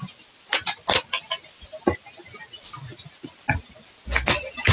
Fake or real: real